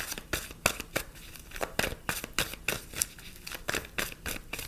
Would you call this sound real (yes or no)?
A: yes